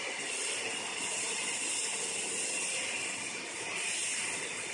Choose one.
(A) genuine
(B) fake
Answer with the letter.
A